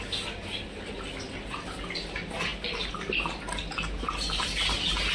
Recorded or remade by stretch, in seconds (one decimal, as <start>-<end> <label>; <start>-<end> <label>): 0.0-5.1 recorded